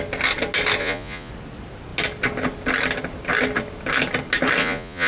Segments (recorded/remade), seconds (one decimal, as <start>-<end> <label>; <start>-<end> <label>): 0.0-0.8 recorded; 0.8-1.3 remade; 1.3-4.6 recorded; 4.6-5.1 remade

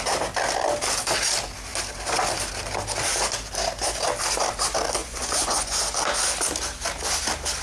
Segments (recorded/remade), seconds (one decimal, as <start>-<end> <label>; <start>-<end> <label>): 0.0-5.0 recorded; 5.0-5.8 remade; 5.8-7.6 recorded

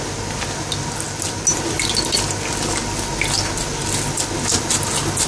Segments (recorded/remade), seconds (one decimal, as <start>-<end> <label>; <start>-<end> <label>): 0.0-5.3 recorded

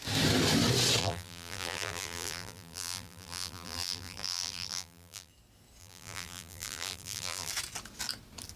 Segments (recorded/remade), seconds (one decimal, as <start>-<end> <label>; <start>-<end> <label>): 0.0-1.0 recorded; 1.0-5.3 remade; 5.3-5.8 recorded; 5.8-7.5 remade; 7.5-8.6 recorded

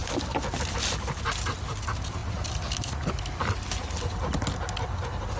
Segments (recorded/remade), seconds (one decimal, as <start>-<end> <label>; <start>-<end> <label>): 0.0-5.4 recorded